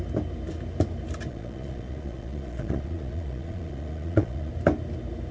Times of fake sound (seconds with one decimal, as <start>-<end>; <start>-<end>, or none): 1.3-4.5